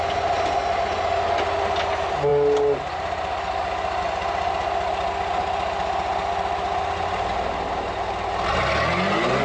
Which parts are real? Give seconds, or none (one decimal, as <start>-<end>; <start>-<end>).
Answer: 0.0-9.4